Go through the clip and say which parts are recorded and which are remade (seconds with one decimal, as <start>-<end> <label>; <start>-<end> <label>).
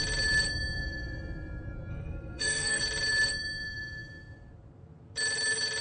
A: 0.0-1.9 recorded; 1.9-2.8 remade; 2.8-5.8 recorded